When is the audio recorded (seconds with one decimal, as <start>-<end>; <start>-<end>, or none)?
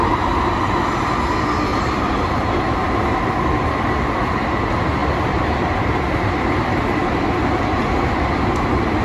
0.0-1.7; 2.7-9.0